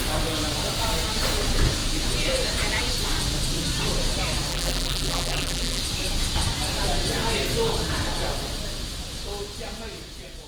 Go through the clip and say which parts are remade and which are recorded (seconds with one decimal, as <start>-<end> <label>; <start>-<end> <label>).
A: 0.0-4.5 recorded; 4.5-5.8 remade; 5.8-10.5 recorded